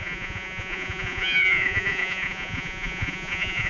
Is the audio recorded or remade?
remade